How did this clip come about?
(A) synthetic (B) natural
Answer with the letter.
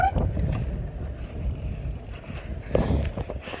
B